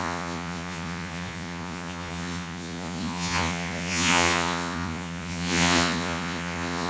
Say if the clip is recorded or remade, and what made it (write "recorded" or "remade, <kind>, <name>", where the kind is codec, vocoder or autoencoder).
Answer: remade, vocoder, Vocos